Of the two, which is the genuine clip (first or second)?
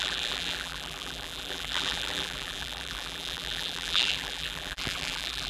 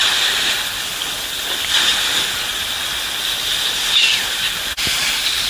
second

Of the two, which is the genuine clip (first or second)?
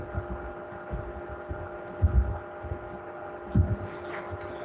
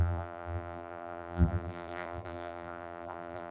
first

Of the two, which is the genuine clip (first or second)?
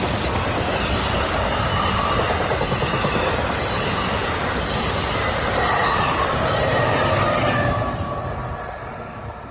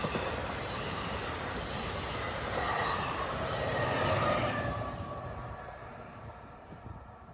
first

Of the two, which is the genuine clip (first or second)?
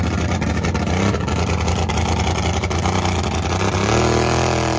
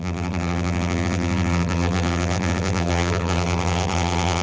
first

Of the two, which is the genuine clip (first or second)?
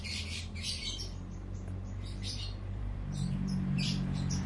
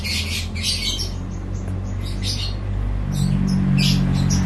second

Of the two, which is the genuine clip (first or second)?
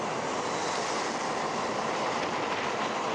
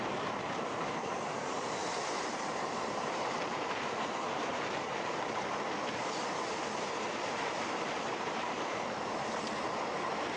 first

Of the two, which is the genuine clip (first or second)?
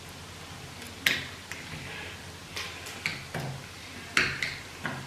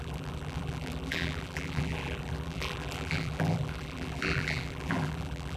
first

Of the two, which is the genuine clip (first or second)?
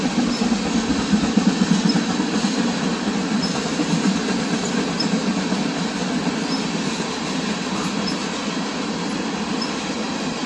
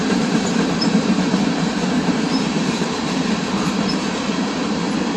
first